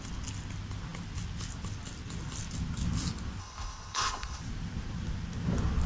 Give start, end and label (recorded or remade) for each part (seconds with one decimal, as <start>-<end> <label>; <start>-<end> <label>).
0.0-3.4 recorded; 3.4-4.4 remade; 4.4-5.9 recorded